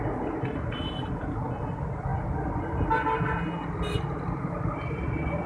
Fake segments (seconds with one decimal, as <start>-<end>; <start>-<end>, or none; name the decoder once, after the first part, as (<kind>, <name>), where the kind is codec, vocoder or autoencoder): none